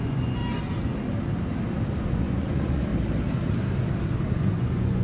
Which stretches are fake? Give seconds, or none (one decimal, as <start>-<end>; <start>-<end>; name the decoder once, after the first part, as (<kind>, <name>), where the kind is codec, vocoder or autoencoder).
0.0-0.4 (vocoder, Vocos); 2.1-2.9; 4.3-5.0